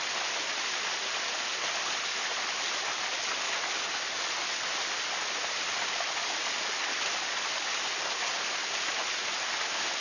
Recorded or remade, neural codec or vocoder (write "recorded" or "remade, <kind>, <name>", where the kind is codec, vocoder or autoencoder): recorded